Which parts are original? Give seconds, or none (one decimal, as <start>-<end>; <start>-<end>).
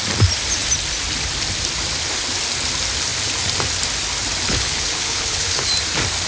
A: 0.0-4.5; 5.7-6.3